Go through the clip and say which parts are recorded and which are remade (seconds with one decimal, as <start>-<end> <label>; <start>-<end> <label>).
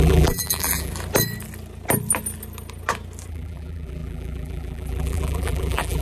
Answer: 0.0-0.9 remade; 0.9-3.3 recorded; 3.3-6.0 remade